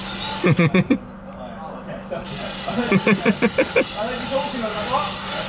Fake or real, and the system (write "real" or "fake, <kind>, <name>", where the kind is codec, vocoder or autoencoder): real